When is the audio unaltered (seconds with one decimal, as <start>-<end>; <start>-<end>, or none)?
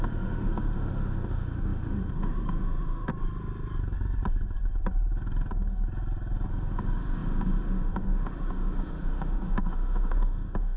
3.1-6.5